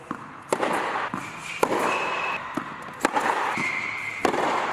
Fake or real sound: real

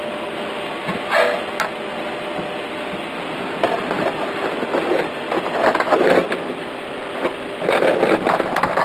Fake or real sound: real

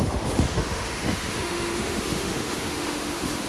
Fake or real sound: fake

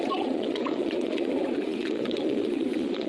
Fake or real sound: fake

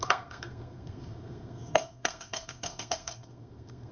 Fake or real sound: fake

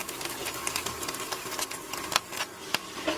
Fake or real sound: real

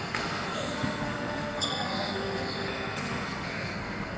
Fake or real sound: fake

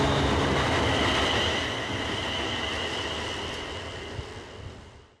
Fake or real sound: real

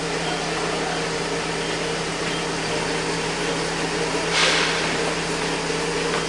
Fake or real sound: real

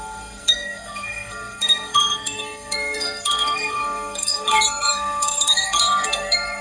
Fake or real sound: fake